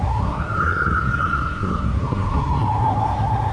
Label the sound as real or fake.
fake